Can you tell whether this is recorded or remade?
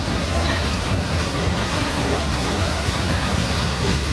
remade